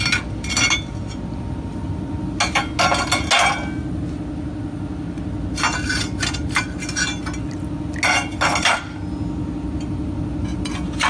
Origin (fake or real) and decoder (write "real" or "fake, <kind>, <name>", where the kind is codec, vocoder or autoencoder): real